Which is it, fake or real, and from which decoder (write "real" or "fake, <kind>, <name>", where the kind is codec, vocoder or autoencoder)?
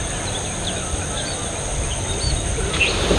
real